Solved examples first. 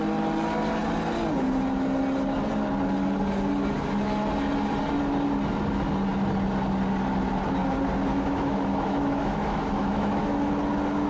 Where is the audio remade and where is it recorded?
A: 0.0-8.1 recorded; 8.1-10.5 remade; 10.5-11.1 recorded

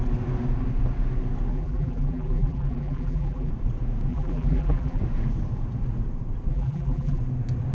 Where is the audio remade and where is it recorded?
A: 0.0-1.5 recorded; 1.5-3.5 remade; 3.5-4.1 recorded; 4.1-5.0 remade; 5.0-6.5 recorded; 6.5-7.2 remade; 7.2-7.7 recorded

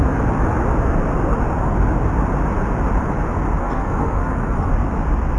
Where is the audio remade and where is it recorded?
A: 0.0-3.6 recorded; 3.6-4.7 remade; 4.7-5.4 recorded